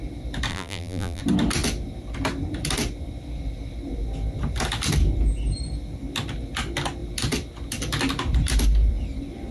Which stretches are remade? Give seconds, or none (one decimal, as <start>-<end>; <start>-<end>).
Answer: 0.5-1.2